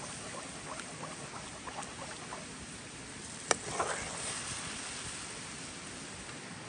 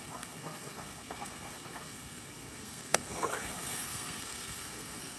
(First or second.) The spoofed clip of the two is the second